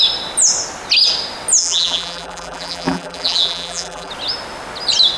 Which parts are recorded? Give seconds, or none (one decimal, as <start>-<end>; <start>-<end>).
0.0-1.6; 4.1-5.2